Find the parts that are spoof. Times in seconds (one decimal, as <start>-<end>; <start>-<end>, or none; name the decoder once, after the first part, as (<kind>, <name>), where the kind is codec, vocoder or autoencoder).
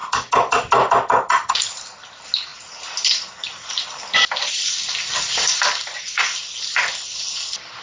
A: none